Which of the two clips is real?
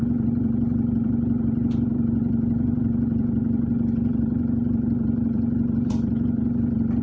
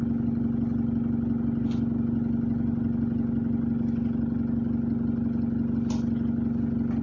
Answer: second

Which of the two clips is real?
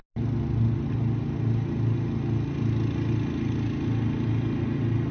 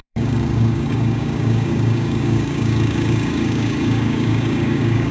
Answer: first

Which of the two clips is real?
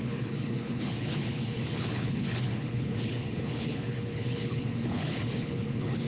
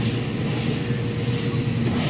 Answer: second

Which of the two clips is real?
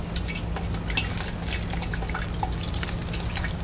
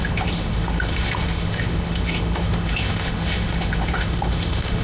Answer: first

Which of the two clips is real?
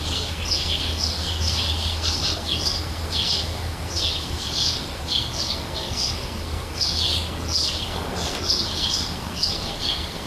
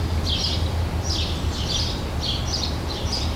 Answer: second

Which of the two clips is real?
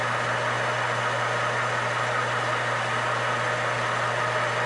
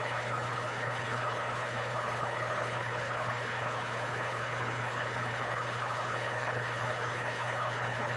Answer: first